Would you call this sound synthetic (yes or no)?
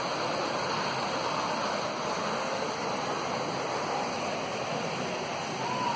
no